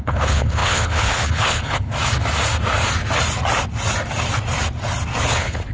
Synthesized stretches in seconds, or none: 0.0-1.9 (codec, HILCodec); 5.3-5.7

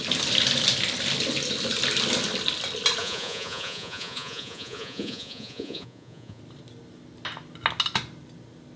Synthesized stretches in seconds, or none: 3.0-6.4 (vocoder, Vocos)

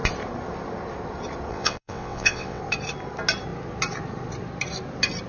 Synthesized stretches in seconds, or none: 1.5-2.6 (vocoder, WaveNeXt)